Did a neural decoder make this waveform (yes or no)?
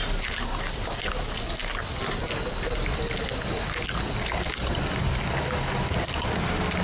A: no